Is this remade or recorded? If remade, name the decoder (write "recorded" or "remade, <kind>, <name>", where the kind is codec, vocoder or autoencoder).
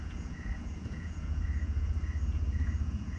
remade, vocoder, Vocos